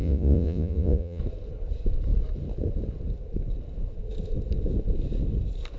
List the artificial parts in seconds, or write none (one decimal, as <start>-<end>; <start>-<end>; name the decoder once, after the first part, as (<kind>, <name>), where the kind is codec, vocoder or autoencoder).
0.0-1.2 (vocoder, Vocos)